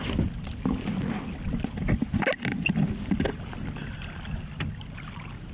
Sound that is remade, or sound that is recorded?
recorded